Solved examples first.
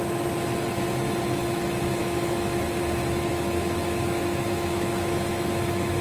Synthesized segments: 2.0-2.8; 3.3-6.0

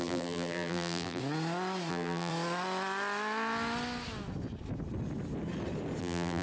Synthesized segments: 0.0-1.2; 1.9-2.3; 6.0-6.4

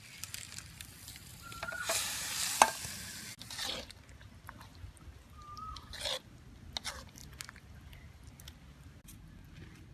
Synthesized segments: 1.3-2.3

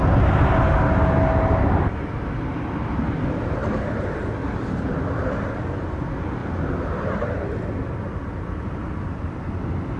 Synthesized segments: none

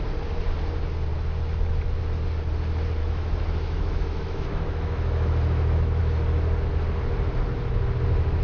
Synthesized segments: 3.0-6.0

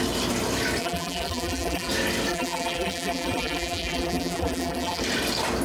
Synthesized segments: 0.8-1.9; 2.3-5.0

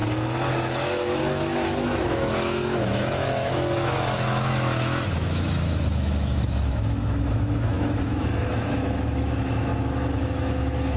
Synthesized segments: 0.5-11.0